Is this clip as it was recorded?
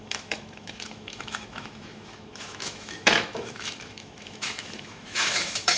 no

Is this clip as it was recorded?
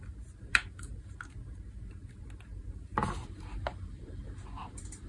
no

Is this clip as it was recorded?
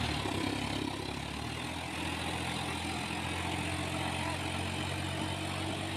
yes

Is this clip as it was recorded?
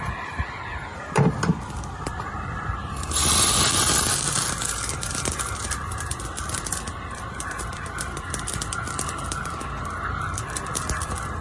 no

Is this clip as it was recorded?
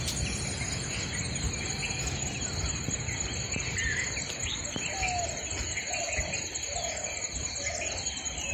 yes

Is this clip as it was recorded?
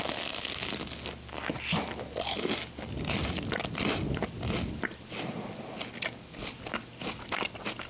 yes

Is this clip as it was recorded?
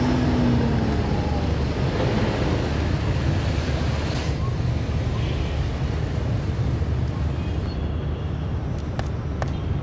yes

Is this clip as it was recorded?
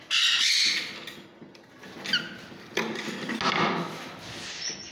yes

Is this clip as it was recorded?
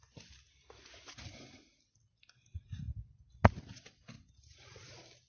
yes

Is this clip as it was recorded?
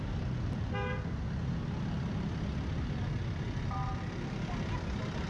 yes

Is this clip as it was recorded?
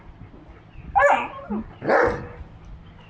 yes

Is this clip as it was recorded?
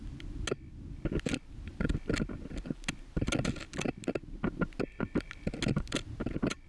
yes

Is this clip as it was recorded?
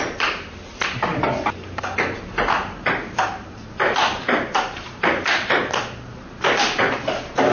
yes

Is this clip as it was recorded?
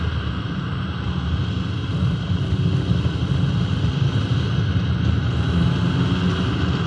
yes